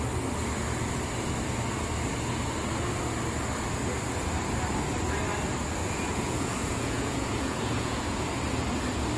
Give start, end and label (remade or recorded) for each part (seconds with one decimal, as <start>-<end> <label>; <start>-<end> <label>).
0.0-5.8 recorded; 5.8-8.2 remade; 8.2-9.2 recorded